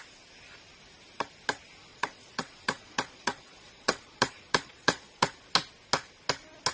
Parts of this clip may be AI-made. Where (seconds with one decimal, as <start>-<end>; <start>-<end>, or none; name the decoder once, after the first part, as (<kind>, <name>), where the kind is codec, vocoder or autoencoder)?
1.9-5.4 (vocoder, Vocos)